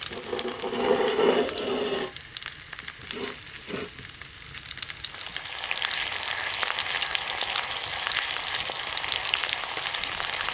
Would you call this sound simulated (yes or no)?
no